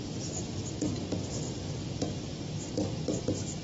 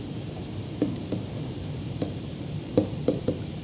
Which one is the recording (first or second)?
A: first